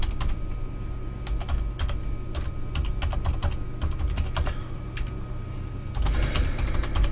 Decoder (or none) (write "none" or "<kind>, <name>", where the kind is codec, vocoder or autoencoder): none